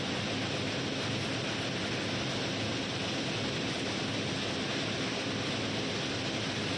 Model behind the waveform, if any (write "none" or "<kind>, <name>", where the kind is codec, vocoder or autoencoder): none